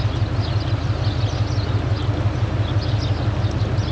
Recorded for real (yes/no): yes